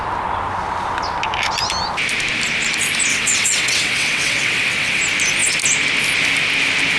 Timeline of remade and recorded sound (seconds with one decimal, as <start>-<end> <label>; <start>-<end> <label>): 0.0-3.1 recorded; 3.1-5.0 remade; 5.0-7.0 recorded

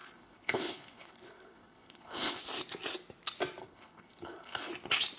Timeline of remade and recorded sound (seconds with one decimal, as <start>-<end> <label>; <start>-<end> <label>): 0.0-2.4 remade; 2.4-3.6 recorded; 3.6-4.7 remade; 4.7-5.2 recorded

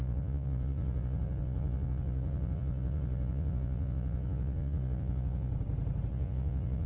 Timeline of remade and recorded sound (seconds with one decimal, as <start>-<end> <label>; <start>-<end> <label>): 0.0-5.5 remade; 5.5-6.1 recorded; 6.1-6.9 remade

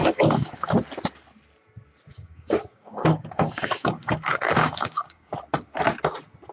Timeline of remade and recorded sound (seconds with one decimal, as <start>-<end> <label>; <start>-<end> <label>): 0.0-0.7 remade; 0.7-2.1 recorded; 2.1-5.3 remade; 5.3-6.5 recorded

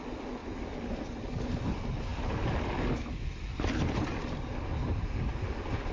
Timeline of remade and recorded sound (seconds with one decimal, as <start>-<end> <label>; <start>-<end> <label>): 0.0-5.9 recorded

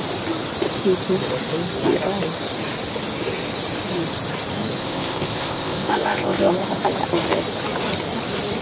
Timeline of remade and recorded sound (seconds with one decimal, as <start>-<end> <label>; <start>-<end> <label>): 0.0-4.8 recorded; 4.8-6.5 remade; 6.5-8.6 recorded

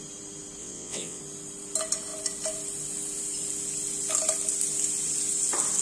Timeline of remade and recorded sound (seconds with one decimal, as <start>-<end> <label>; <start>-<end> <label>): 0.0-0.6 recorded; 0.6-1.2 remade; 1.2-5.8 recorded

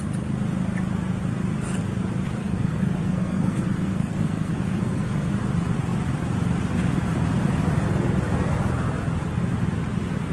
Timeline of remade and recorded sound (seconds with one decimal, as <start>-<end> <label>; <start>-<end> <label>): 0.0-2.4 recorded; 2.4-5.3 remade; 5.3-10.3 recorded